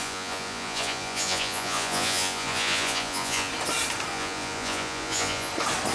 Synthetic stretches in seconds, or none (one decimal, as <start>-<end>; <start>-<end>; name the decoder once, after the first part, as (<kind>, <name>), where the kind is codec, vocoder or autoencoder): 0.0-3.5 (vocoder, Vocos); 4.1-5.5